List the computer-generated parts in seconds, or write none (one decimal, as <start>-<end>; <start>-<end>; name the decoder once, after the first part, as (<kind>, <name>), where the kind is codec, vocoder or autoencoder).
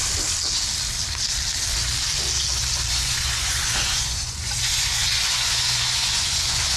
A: 2.9-6.8 (vocoder, Vocos)